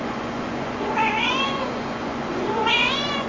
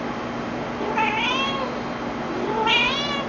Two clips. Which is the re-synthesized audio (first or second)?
first